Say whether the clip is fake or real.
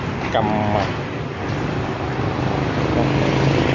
real